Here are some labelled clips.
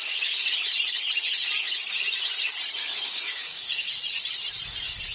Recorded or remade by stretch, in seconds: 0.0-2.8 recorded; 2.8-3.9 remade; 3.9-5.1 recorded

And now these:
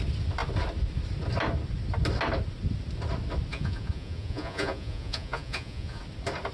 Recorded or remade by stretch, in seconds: 0.0-3.5 recorded; 3.5-6.0 remade; 6.0-6.5 recorded

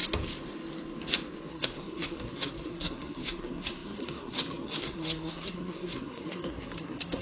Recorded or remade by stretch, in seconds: 0.0-1.5 recorded; 1.5-7.2 remade

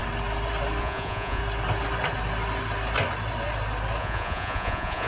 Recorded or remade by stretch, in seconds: 0.0-0.8 recorded; 0.8-1.4 remade; 1.4-4.0 recorded; 4.0-5.1 remade

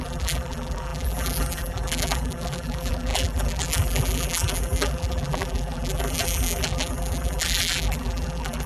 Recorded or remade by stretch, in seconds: 0.0-8.7 remade

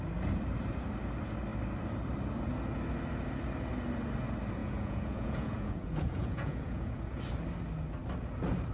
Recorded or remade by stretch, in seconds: 0.0-4.6 recorded; 4.6-7.2 remade; 7.2-8.7 recorded

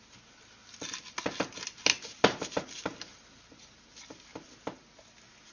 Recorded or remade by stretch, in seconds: 0.0-5.5 recorded

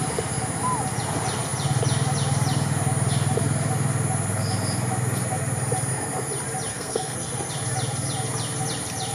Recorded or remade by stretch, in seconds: 0.0-6.7 recorded; 6.7-7.5 remade; 7.5-9.1 recorded